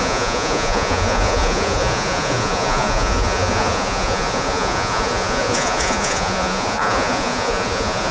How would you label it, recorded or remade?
remade